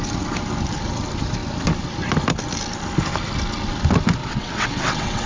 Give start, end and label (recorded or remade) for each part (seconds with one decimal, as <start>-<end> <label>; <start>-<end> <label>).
0.0-4.2 recorded; 4.2-5.3 remade